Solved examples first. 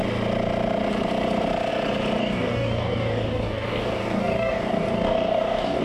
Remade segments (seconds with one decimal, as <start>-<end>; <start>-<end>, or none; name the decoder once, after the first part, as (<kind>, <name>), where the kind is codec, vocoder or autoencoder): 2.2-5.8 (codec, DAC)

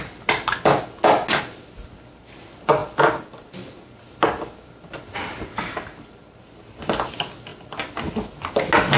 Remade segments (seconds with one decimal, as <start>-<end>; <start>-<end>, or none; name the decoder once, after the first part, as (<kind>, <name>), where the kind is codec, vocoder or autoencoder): none

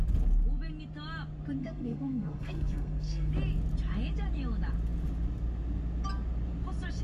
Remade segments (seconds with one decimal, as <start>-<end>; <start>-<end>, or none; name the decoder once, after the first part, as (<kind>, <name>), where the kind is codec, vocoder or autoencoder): 1.6-3.3 (codec, SNAC)

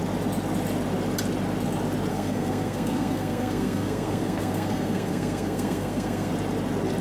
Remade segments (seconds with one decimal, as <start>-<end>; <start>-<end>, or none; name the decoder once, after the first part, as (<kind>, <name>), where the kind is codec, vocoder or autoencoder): 2.1-6.3 (codec, SNAC)

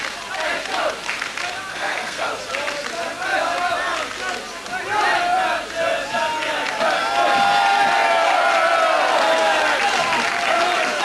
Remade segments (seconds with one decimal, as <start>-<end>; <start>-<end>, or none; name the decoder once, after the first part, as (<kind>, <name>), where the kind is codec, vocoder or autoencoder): 1.7-2.3 (codec, SNAC)

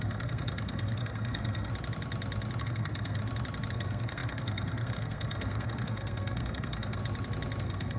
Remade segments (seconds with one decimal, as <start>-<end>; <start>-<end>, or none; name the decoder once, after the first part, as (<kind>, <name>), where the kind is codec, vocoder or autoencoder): 0.0-1.7 (codec, SNAC); 2.6-3.2; 3.7-7.0; 7.6-8.0

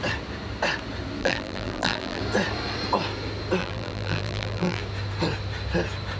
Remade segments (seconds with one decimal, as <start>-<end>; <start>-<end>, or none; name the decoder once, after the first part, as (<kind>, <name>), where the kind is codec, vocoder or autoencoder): 1.2-2.2 (vocoder, BigVGAN v2); 3.6-4.8

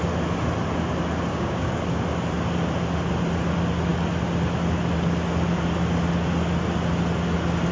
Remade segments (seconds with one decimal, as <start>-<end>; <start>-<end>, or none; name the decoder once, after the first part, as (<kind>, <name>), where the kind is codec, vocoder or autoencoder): 1.3-2.0 (codec, DAC)